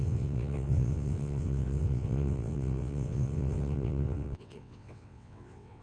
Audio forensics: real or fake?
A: fake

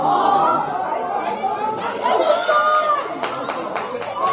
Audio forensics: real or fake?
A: real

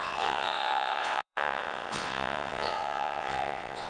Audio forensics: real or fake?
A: fake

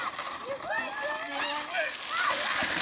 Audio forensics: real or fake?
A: real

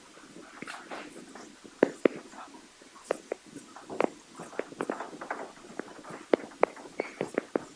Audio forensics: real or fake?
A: real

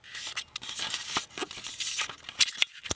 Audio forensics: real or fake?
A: real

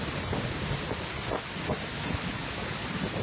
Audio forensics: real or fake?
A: real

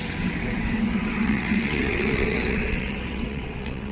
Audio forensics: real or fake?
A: fake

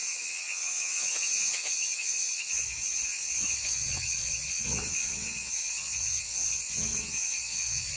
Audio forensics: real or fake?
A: fake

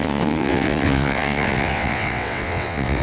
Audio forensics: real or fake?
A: fake